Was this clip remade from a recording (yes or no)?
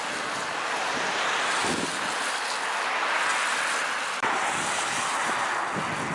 no